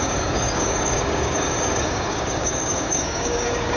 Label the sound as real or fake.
fake